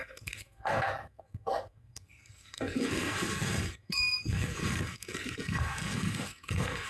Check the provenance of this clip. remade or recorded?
remade